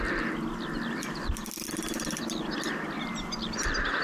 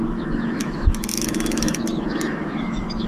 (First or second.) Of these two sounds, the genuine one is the first